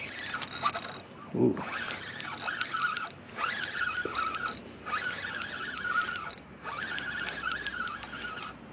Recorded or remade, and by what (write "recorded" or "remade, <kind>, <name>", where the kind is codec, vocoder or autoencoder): recorded